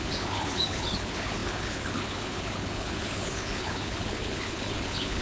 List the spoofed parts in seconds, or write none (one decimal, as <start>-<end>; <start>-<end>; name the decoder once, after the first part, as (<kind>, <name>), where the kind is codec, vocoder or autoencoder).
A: 0.0-5.2 (codec, HILCodec)